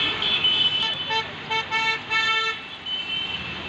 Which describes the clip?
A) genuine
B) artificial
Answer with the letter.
A